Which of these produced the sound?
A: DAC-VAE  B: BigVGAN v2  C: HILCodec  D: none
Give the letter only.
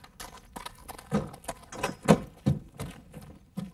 D